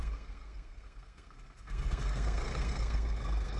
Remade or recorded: remade